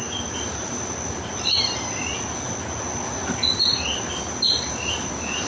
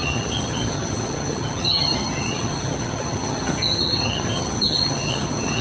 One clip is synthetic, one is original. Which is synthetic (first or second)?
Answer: second